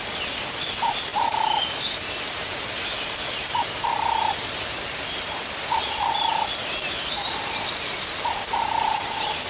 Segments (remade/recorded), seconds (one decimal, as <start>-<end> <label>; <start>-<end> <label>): 0.0-9.5 recorded

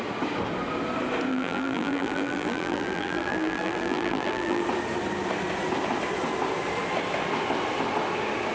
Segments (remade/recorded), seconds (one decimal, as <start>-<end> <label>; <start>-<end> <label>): 0.0-1.3 recorded; 1.3-4.6 remade; 4.6-8.5 recorded

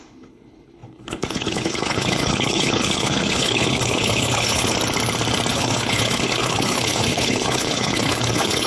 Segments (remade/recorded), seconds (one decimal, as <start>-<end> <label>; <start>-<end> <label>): 0.0-4.7 remade; 4.7-5.5 recorded; 5.5-8.7 remade

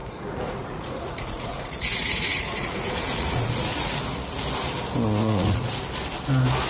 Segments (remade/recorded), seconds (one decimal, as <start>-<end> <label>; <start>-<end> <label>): 0.0-4.0 remade; 4.0-5.2 recorded; 5.2-5.8 remade; 5.8-6.7 recorded

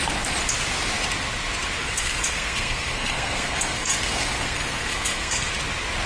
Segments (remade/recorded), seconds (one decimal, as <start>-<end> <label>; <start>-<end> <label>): 0.0-1.8 recorded; 1.8-5.5 remade; 5.5-6.1 recorded

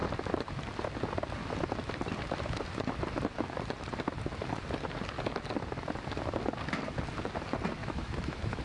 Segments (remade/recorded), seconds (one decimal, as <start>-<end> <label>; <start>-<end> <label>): 0.0-7.8 recorded; 7.8-8.6 remade

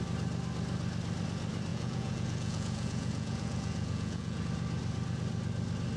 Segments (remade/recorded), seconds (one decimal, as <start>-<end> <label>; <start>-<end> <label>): 0.0-1.7 recorded; 1.7-4.4 remade; 4.4-6.0 recorded